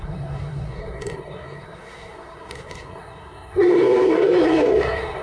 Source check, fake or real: fake